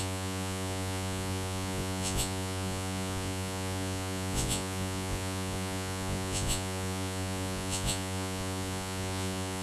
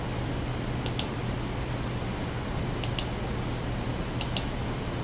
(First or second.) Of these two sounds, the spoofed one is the first